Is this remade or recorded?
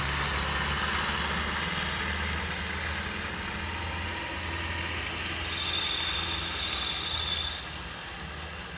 recorded